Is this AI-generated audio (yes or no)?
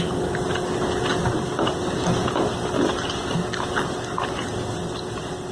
no